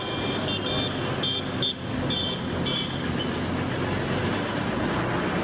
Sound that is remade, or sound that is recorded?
recorded